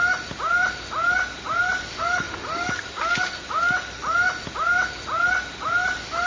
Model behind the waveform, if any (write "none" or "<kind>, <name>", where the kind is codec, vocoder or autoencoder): none